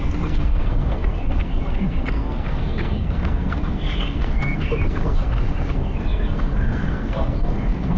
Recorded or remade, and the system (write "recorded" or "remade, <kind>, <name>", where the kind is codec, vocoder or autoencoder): remade, codec, SNAC